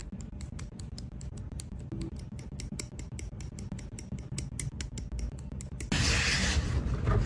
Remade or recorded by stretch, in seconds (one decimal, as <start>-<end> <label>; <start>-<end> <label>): 0.0-7.3 recorded